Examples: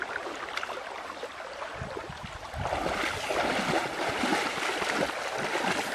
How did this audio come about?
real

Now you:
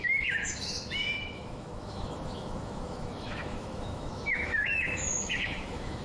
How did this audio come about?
fake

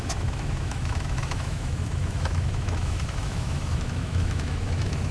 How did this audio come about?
fake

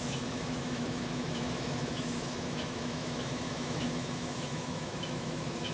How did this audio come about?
fake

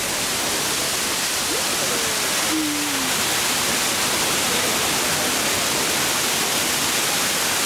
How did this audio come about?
real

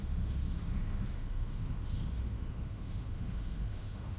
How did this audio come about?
fake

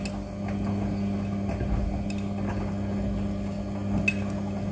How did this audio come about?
real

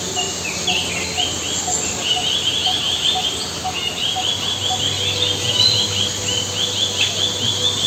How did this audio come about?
real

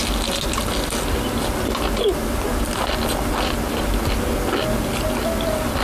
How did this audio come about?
real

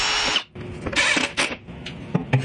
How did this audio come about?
real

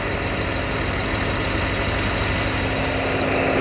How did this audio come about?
real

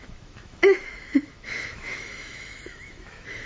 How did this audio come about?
fake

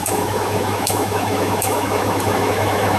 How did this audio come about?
fake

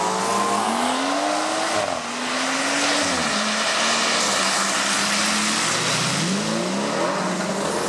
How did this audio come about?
real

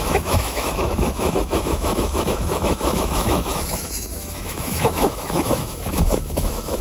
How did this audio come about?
fake